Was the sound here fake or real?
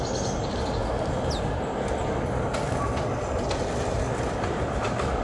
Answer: real